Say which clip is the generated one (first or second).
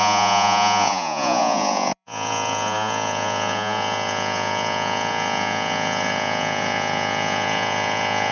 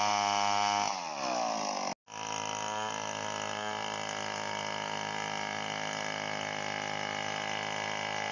first